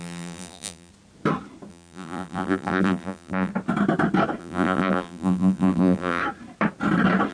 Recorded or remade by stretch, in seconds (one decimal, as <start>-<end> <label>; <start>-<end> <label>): 0.0-0.9 remade; 0.9-1.7 recorded; 1.7-3.5 remade; 3.5-4.4 recorded; 4.4-6.2 remade; 6.2-7.3 recorded